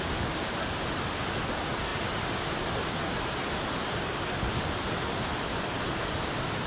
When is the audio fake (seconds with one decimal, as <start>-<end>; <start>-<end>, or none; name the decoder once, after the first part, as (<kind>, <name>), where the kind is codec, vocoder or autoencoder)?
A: none